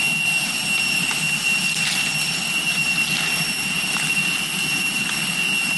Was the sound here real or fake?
real